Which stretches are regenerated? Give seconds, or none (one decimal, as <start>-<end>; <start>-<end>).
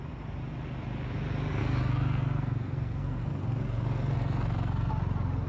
1.6-4.9